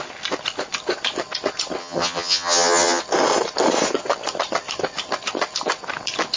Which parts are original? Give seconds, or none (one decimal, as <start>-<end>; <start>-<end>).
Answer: 0.0-1.8; 3.0-6.4